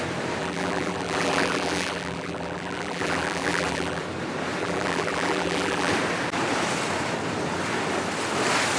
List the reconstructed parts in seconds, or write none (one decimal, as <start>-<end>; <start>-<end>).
0.4-4.0; 4.6-5.9